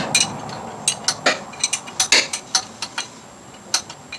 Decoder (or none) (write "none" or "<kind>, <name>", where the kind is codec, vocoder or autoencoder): none